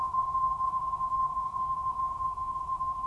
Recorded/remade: remade